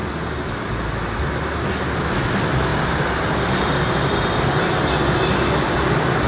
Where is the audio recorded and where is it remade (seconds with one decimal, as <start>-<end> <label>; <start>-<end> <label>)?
0.0-6.3 recorded

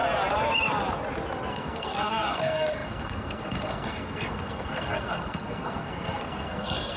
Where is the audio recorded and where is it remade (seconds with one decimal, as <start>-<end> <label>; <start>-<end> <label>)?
0.0-1.5 recorded; 1.5-7.0 remade

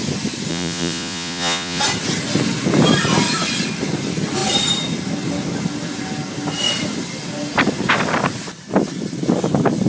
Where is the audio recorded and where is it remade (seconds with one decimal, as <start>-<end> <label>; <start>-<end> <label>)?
0.0-0.5 recorded; 0.5-1.8 remade; 1.8-9.9 recorded

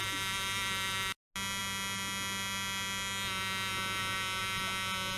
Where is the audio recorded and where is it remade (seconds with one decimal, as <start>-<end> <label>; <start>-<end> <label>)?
0.0-5.2 recorded